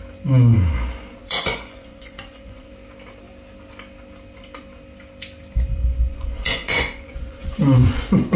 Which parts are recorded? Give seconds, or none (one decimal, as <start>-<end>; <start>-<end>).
0.0-1.2; 2.7-5.8